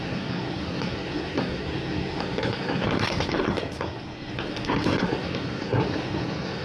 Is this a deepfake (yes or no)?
yes